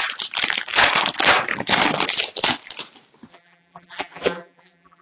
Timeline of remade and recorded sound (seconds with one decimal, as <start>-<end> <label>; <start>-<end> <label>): 0.0-3.3 recorded; 3.3-5.0 remade